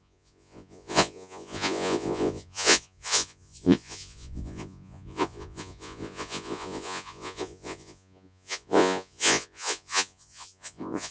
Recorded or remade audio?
remade